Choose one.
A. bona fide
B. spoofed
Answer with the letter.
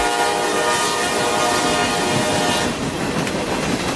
A